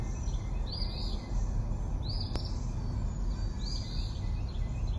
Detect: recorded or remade recorded